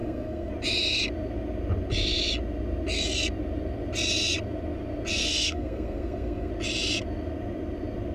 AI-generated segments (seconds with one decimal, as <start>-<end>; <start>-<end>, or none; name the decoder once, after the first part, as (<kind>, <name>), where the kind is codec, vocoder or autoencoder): 0.0-0.5 (codec, SNAC); 5.2-6.5